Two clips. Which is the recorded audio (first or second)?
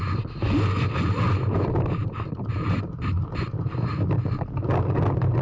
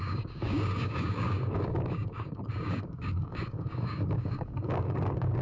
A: first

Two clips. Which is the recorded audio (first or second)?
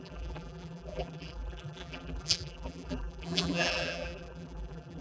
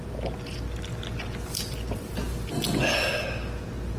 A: second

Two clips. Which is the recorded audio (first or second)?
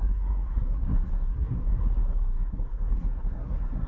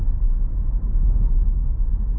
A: second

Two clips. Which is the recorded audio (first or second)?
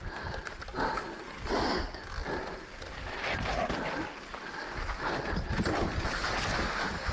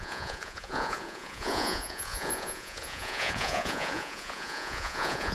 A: first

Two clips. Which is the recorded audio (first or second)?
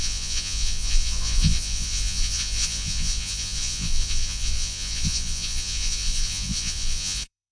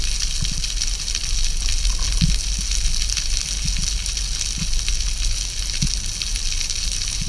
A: second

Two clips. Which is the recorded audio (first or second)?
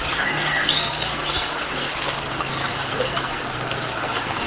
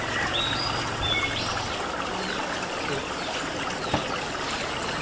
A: second